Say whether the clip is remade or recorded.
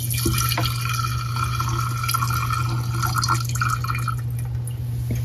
recorded